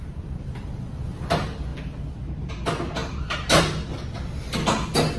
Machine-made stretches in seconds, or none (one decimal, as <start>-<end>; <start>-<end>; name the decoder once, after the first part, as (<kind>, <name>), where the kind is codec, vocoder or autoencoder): none